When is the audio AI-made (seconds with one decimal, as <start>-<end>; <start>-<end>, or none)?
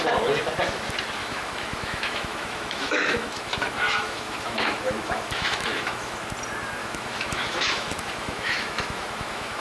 1.2-6.3; 6.8-9.6